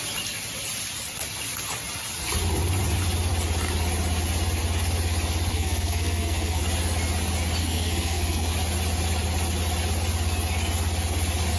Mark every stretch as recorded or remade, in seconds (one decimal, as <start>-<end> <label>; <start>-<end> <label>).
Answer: 0.0-5.5 recorded; 5.5-6.6 remade; 6.6-7.6 recorded; 7.6-8.5 remade; 8.5-11.6 recorded